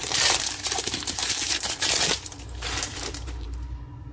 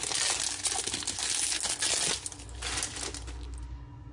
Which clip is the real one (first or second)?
second